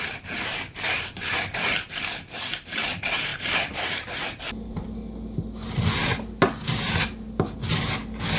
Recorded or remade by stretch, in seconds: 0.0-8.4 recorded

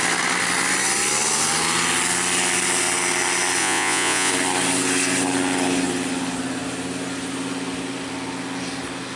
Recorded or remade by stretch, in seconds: 0.0-3.6 recorded; 3.6-4.3 remade; 4.3-9.2 recorded

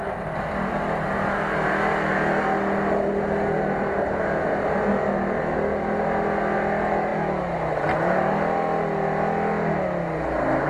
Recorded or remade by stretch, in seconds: 0.0-10.7 recorded

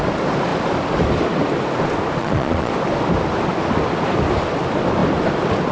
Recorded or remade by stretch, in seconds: 0.0-2.2 recorded; 2.2-2.7 remade; 2.7-5.7 recorded

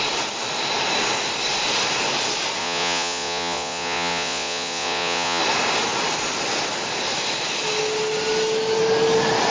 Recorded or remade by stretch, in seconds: 0.0-2.6 recorded; 2.6-5.4 remade; 5.4-9.5 recorded

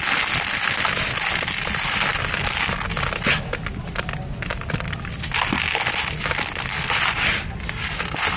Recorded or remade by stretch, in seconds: 0.0-8.4 recorded